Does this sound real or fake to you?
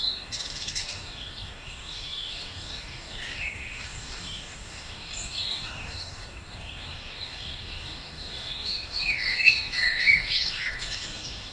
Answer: fake